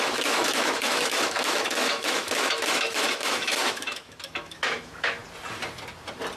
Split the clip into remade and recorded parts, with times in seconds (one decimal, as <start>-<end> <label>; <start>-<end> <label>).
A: 0.0-5.2 remade; 5.2-6.4 recorded